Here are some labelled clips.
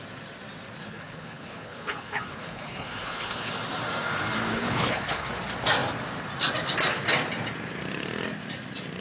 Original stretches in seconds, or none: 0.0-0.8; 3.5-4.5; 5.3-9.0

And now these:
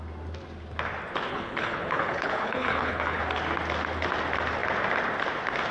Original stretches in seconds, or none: 0.0-1.3; 3.2-5.7

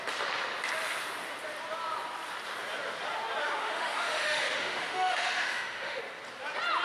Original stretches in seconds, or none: 0.0-3.4; 6.0-6.8